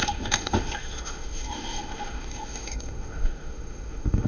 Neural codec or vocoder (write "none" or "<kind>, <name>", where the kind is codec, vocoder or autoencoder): autoencoder, DAC-VAE